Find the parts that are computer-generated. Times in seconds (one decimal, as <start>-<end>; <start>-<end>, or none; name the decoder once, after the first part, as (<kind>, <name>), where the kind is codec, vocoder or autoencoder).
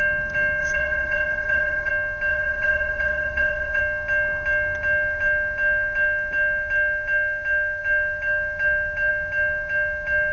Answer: 0.6-1.9 (vocoder, WaveNeXt); 2.3-3.8